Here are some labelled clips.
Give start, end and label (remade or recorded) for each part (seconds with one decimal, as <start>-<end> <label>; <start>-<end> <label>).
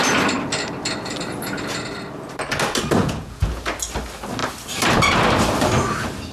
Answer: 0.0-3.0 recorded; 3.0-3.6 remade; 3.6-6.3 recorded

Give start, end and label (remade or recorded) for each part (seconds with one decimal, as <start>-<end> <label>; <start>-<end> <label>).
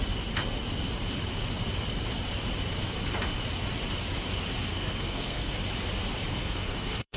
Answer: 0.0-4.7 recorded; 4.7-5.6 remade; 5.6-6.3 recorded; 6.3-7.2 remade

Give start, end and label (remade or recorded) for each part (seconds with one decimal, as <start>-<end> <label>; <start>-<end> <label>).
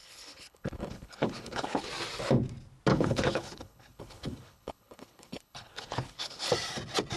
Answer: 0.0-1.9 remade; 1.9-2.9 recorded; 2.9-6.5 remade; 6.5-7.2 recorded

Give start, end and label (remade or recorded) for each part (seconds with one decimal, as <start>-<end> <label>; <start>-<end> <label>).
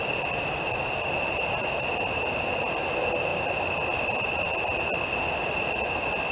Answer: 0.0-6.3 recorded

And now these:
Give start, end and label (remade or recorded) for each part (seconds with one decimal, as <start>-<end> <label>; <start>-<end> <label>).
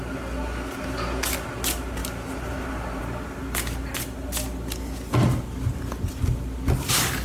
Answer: 0.0-2.0 recorded; 2.0-3.0 remade; 3.0-5.1 recorded; 5.1-5.8 remade; 5.8-7.2 recorded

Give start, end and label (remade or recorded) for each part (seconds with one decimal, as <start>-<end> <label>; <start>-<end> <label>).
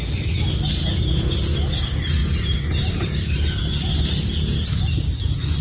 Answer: 0.0-0.8 recorded; 0.8-1.4 remade; 1.4-5.6 recorded